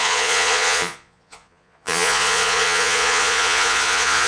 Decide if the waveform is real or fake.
fake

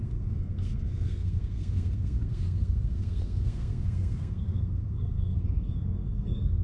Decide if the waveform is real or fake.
fake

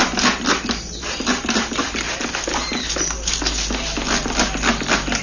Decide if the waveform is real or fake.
real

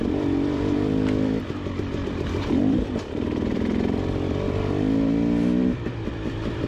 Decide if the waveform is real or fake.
fake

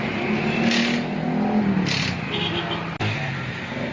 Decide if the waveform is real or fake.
real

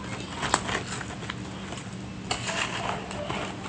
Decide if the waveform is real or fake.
real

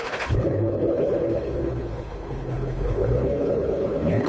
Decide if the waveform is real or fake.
fake